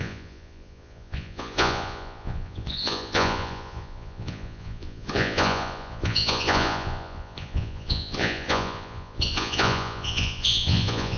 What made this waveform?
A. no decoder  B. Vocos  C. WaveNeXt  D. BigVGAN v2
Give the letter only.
B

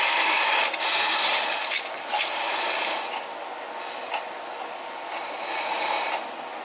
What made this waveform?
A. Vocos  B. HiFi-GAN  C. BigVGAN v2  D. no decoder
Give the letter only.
D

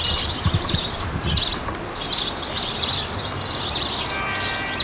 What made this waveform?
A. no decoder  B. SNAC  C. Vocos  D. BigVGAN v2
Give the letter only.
A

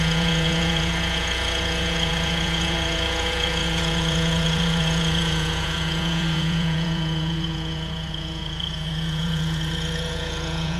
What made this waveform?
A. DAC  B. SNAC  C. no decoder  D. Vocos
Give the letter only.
D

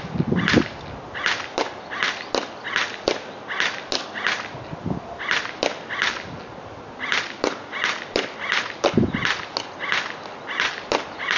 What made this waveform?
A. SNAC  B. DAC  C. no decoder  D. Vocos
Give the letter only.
C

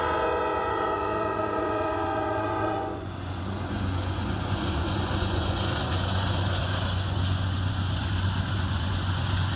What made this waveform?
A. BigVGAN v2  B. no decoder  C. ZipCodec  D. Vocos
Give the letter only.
D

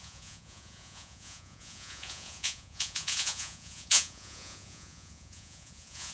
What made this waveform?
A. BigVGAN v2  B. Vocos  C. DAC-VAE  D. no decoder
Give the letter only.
B